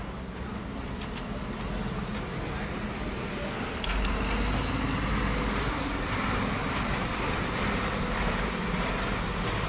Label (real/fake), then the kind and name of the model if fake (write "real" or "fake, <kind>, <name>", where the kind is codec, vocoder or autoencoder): real